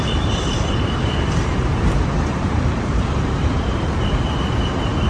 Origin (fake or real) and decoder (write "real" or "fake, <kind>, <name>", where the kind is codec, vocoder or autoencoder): fake, vocoder, BigVGAN v2